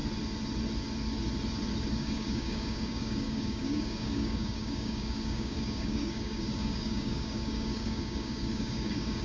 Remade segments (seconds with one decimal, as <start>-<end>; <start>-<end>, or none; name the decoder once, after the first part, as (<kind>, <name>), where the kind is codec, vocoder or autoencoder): 2.0-9.2 (codec, DAC)